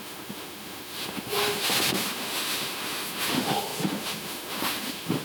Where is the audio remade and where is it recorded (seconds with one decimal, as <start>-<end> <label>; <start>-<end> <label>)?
0.0-5.2 remade